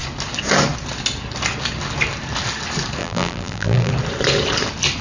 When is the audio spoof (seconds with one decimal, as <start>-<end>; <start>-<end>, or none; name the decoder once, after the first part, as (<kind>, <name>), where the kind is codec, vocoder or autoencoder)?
3.0-3.9 (vocoder, BigVGAN v2)